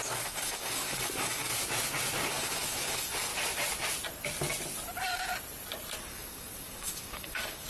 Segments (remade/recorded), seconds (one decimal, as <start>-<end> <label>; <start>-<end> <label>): 0.0-1.5 remade; 1.5-2.3 recorded; 2.3-3.3 remade; 3.3-6.0 recorded; 6.0-7.7 remade